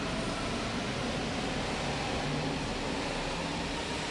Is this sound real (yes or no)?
yes